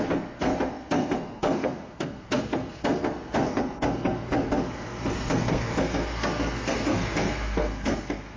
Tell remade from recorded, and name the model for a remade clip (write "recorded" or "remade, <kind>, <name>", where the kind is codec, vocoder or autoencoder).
remade, codec, SNAC